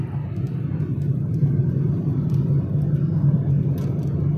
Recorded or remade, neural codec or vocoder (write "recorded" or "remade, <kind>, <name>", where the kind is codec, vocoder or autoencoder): recorded